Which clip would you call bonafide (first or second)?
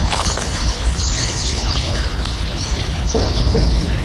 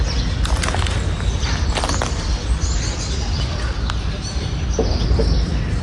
second